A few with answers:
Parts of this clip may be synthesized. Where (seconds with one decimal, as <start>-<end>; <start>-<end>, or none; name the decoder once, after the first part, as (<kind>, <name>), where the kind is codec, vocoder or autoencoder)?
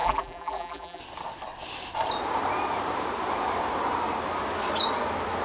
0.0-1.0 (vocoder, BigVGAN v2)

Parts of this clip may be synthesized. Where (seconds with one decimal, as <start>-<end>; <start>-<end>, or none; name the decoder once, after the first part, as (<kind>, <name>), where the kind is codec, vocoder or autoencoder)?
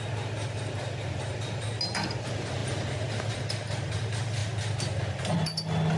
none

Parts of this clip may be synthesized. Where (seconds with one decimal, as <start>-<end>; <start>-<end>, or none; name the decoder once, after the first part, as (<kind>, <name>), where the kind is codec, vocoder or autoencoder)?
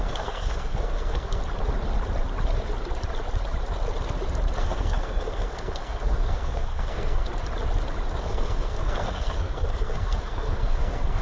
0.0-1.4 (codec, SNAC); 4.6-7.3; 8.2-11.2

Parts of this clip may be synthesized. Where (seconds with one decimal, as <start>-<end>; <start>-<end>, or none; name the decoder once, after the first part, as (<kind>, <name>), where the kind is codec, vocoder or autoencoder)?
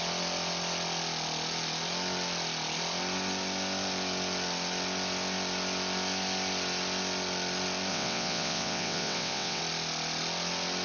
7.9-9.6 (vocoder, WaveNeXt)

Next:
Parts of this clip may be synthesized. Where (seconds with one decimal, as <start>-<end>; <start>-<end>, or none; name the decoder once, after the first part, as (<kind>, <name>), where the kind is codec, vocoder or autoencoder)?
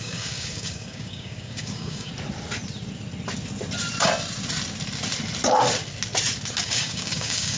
0.0-2.1 (codec, DAC); 6.6-7.6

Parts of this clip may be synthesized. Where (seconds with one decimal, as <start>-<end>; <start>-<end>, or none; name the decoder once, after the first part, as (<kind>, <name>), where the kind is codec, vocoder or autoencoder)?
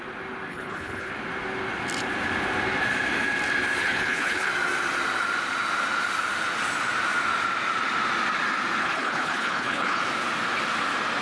0.5-1.1 (codec, HILCodec); 3.8-4.5; 8.8-10.0